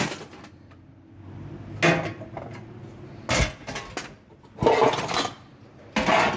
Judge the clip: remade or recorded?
recorded